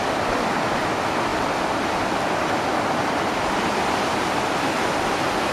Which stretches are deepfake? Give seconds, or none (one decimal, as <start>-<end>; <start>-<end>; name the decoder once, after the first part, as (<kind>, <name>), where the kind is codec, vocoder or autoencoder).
1.3-4.6 (vocoder, BigVGAN v2)